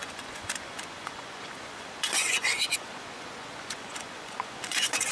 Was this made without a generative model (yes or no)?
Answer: no